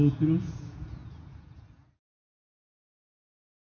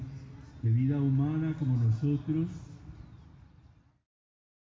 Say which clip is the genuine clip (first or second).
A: second